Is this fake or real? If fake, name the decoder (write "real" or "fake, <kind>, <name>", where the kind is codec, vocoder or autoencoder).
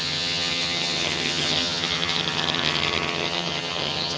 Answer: fake, vocoder, HiFi-GAN